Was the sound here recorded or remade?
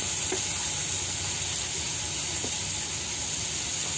recorded